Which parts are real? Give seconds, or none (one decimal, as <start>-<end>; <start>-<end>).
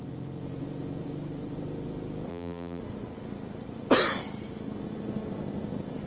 0.0-2.3; 2.8-6.1